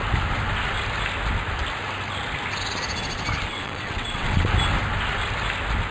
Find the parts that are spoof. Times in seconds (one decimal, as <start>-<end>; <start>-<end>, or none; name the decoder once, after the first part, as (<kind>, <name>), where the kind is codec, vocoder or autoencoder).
3.5-4.5 (vocoder, WaveNeXt)